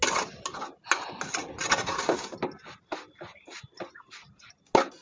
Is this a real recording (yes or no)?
yes